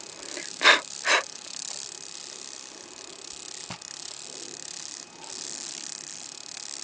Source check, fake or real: real